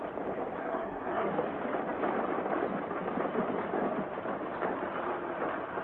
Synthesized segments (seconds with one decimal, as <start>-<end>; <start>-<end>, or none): 0.6-1.3